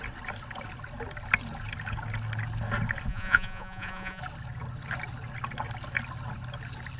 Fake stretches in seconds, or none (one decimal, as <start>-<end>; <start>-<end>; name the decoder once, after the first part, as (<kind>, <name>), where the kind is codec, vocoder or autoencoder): 3.1-4.2 (vocoder, Vocos)

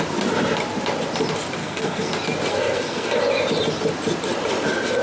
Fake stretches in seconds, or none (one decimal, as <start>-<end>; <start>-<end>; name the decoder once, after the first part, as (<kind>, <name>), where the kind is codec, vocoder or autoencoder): 1.6-2.1 (codec, SNAC); 2.5-3.2

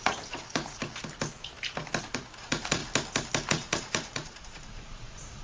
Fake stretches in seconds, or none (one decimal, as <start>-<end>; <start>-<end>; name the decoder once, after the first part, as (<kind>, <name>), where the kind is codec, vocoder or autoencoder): 0.0-0.8 (vocoder, Vocos); 2.0-2.8; 3.5-5.4

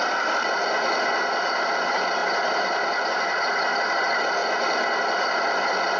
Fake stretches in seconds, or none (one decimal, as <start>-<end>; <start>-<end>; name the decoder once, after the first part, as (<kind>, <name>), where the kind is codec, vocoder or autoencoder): none

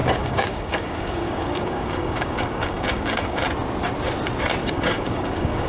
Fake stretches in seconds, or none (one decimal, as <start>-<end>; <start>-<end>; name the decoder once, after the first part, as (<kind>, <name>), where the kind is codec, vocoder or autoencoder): 0.0-3.4 (codec, DAC); 4.6-5.7

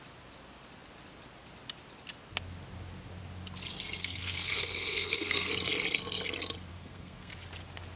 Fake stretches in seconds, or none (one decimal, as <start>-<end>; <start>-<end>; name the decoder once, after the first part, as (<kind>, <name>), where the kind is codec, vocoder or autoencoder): 4.0-5.5 (codec, SNAC); 6.7-7.3